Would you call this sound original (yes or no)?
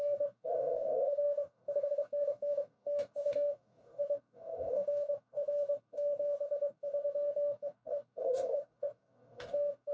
no